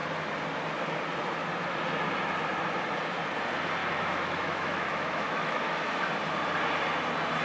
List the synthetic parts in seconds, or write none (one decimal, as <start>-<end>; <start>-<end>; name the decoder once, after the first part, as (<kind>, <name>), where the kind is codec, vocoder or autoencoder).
3.8-6.0 (autoencoder, DAC-VAE)